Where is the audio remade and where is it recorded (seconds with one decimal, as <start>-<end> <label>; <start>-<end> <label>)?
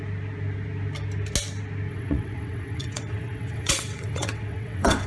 0.0-1.9 recorded; 1.9-5.1 remade